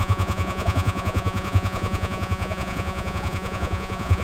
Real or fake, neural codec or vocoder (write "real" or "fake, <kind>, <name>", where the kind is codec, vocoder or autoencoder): fake, vocoder, Vocos